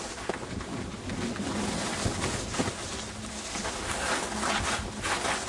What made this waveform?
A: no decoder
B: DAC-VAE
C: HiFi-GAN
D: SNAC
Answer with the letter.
A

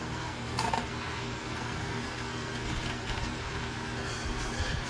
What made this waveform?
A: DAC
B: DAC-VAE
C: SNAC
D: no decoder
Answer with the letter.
C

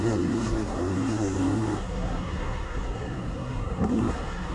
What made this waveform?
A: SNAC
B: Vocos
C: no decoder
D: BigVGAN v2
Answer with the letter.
A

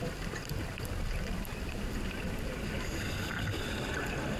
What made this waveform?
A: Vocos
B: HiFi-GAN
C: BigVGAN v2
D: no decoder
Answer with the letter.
D